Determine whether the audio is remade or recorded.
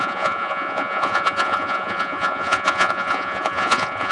remade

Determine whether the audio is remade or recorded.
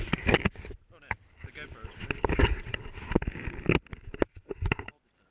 recorded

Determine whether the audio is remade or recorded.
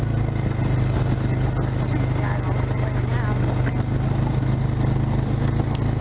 recorded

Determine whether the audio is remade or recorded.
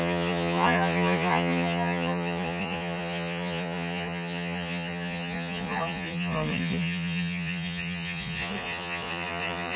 remade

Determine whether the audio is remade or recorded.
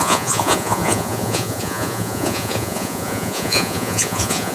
remade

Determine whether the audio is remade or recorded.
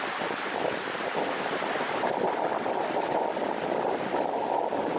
recorded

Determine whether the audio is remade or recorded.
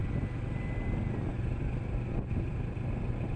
recorded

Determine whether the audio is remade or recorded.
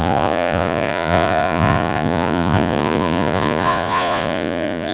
remade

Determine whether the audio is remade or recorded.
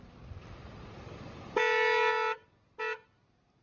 recorded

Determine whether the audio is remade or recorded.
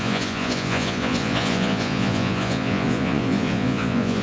remade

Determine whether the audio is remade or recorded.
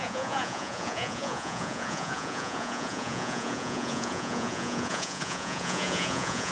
remade